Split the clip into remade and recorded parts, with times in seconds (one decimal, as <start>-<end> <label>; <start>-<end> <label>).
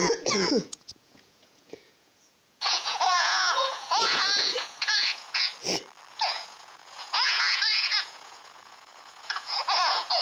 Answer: 0.0-5.5 remade; 5.5-6.1 recorded; 6.1-10.2 remade